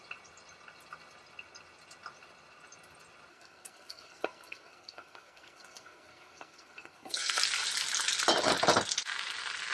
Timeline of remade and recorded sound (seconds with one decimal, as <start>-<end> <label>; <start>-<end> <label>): 0.0-3.3 recorded; 3.3-7.4 remade; 7.4-9.7 recorded